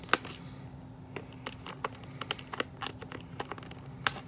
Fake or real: real